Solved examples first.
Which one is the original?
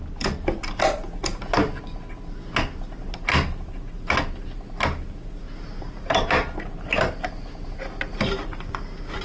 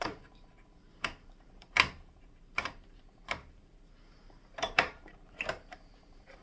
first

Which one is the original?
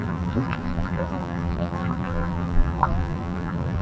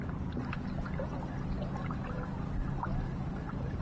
second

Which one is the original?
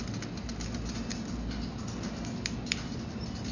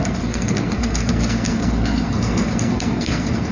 first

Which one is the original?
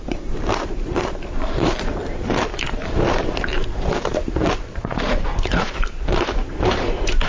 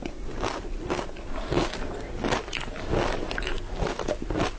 second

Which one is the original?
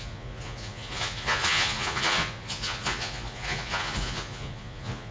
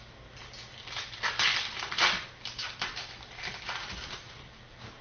second